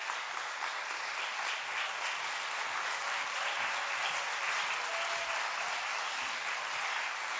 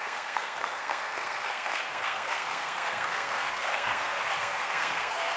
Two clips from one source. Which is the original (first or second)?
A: first